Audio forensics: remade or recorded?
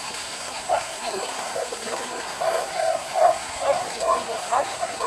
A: remade